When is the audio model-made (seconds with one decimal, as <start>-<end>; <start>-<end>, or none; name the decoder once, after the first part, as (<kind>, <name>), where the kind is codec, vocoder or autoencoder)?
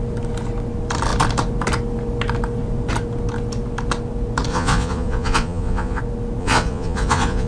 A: 4.5-6.0 (vocoder, Vocos); 6.4-7.5